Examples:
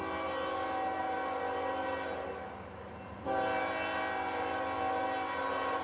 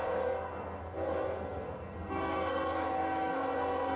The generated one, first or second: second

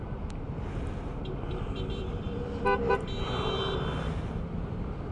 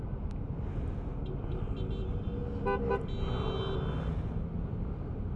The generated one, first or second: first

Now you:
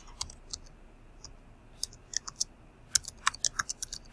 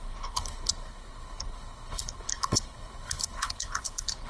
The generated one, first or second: second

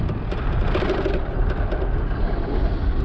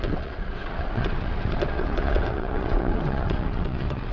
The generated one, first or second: second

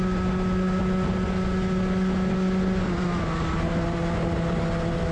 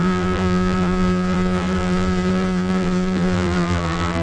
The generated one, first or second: second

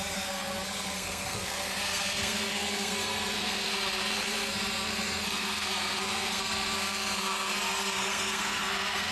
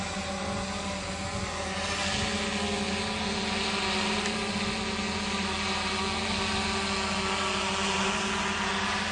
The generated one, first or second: first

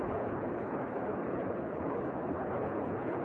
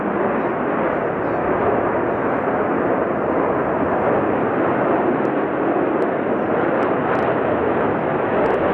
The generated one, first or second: first